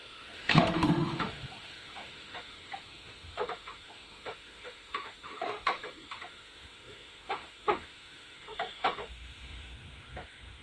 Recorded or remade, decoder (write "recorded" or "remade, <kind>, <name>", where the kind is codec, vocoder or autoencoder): remade, autoencoder, DAC-VAE